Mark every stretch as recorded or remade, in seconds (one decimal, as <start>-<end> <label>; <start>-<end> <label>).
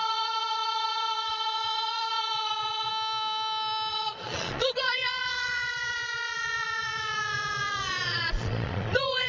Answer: 0.0-2.9 remade; 2.9-3.9 recorded; 3.9-9.3 remade